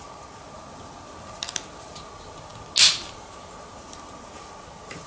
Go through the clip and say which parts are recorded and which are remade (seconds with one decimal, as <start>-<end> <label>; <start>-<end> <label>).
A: 0.0-5.1 recorded